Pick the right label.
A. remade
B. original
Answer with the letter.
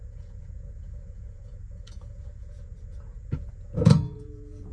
A